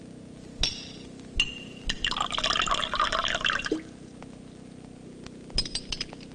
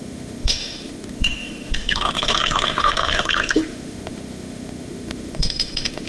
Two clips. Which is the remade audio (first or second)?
second